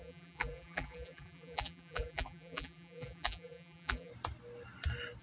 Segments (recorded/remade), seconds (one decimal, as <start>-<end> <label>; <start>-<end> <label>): 0.0-4.1 remade; 4.1-5.2 recorded